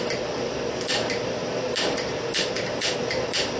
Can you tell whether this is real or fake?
fake